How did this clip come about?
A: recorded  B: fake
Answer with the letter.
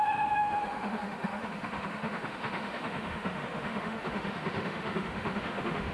B